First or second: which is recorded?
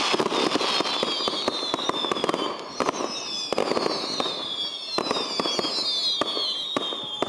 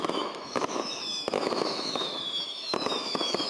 first